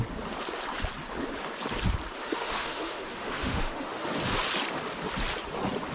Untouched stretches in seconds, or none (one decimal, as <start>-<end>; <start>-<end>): 0.0-2.2; 4.1-5.9